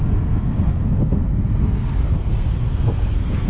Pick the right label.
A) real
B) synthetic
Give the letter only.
B